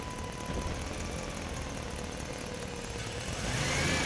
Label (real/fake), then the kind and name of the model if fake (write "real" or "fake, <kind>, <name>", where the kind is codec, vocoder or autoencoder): real